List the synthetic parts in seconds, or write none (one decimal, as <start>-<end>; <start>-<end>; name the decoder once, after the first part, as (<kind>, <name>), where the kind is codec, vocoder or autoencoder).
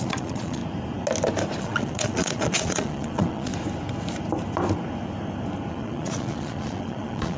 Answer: 0.0-0.6 (vocoder, Vocos); 1.6-3.5; 5.7-7.4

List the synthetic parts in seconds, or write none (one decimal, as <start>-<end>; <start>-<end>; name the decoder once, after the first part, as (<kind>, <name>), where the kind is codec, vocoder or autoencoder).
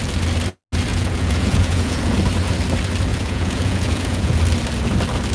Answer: 0.9-2.2 (vocoder, Vocos); 3.1-4.4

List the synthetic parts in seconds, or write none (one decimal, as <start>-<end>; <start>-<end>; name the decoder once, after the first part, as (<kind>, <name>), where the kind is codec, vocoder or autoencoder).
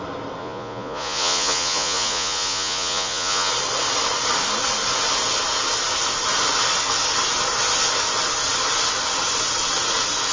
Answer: 0.4-3.5 (vocoder, Vocos)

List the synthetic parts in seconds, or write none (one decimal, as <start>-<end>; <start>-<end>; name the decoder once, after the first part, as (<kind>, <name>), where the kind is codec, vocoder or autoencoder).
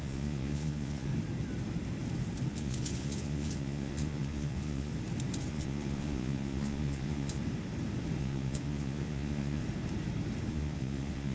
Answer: 0.0-1.1 (vocoder, Vocos); 2.5-4.9; 5.5-7.4; 8.2-9.6; 10.5-11.3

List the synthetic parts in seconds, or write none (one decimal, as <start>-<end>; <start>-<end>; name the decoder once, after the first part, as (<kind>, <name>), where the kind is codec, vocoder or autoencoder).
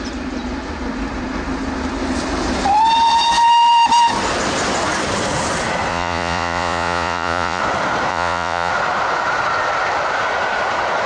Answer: 5.9-7.6 (vocoder, Vocos); 8.1-8.7